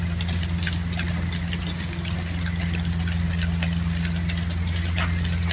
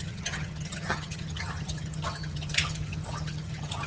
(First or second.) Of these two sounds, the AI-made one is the second